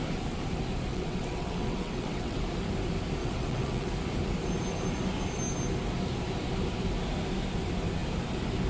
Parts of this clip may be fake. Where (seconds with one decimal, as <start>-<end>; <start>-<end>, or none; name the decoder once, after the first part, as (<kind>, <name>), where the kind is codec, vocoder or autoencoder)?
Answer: 0.9-2.4 (vocoder, WaveNeXt); 3.2-3.9